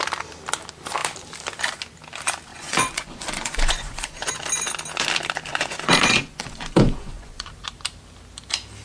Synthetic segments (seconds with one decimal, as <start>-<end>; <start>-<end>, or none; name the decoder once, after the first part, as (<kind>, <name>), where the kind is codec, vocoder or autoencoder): 2.5-4.3 (vocoder, Vocos); 5.5-7.5